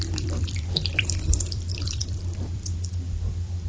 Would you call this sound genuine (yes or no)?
no